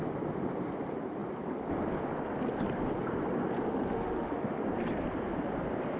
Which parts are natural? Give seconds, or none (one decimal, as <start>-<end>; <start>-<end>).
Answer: 0.0-3.7; 4.6-6.0